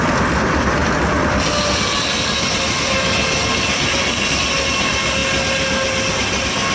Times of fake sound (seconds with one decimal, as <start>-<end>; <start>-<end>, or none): none